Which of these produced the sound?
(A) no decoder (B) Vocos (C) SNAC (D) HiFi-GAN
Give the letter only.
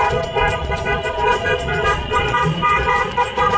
B